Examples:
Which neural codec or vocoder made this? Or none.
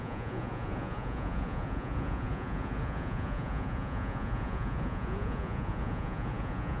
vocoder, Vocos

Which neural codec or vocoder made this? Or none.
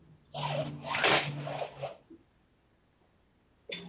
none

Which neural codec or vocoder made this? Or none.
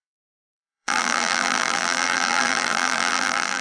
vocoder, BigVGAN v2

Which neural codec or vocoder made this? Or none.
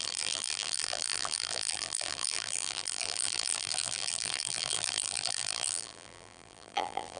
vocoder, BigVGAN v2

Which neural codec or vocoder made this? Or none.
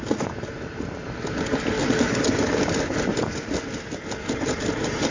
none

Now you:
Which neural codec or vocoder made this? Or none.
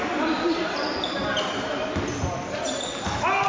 none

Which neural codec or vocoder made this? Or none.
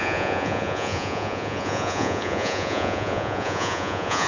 vocoder, Vocos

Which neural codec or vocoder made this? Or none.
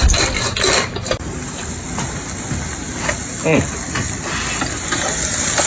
none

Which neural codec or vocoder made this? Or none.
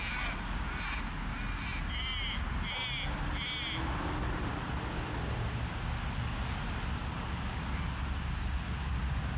none